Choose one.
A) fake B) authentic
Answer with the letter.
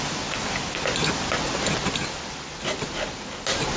B